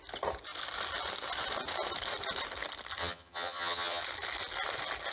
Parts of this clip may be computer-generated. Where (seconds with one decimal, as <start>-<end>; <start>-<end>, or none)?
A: 3.0-4.0